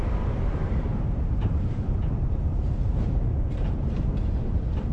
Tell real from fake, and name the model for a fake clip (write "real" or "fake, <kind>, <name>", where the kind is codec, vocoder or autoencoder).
fake, vocoder, BigVGAN v2